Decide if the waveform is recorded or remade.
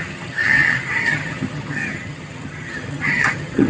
remade